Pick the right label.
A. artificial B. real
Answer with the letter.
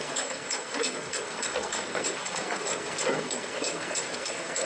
A